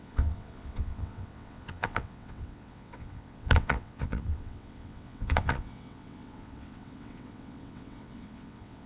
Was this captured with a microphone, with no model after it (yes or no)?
no